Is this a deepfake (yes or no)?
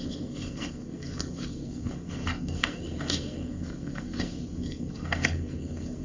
yes